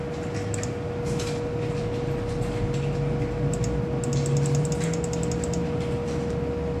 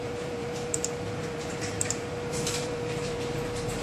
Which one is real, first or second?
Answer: first